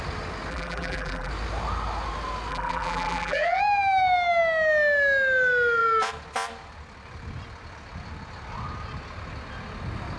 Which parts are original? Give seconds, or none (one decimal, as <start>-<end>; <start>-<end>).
0.0-0.5; 1.3-2.5; 3.6-10.2